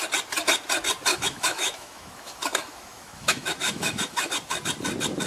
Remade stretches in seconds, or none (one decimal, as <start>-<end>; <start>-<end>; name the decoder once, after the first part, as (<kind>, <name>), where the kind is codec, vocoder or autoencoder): 1.1-4.3 (autoencoder, DAC-VAE)